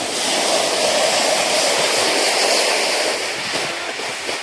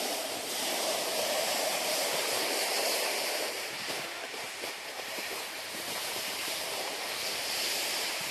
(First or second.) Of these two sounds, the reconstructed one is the second